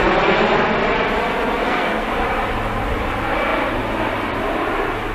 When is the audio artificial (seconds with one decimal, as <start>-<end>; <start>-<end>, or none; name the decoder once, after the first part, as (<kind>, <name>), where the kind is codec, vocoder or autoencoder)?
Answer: 1.6-2.1 (codec, SNAC)